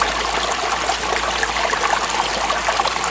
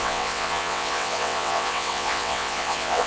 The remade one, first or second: second